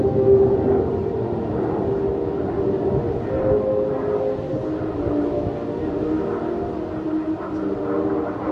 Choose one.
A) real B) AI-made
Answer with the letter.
A